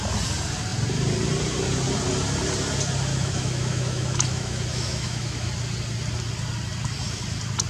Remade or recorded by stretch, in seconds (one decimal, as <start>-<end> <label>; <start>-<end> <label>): 0.0-3.1 recorded; 3.1-5.5 remade; 5.5-7.7 recorded